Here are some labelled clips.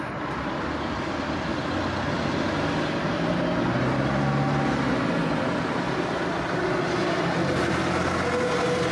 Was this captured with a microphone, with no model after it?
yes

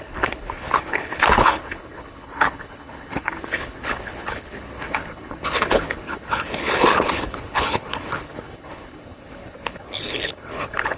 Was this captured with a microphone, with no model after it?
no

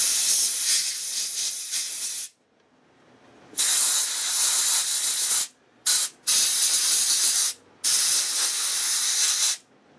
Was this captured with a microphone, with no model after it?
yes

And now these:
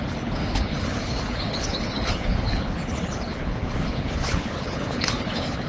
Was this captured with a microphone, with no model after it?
no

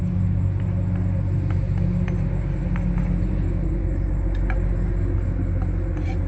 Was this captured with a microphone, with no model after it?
yes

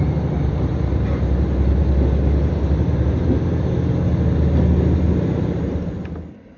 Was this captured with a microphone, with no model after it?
yes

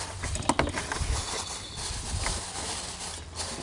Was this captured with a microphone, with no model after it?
yes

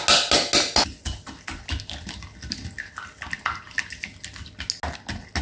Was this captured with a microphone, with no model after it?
yes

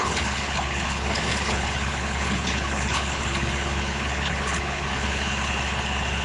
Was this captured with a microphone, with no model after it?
no